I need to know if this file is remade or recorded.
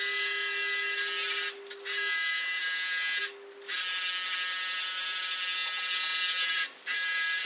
recorded